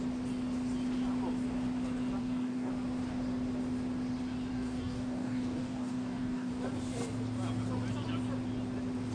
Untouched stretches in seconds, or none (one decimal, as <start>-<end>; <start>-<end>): 0.0-2.2; 2.7-4.5; 6.5-9.1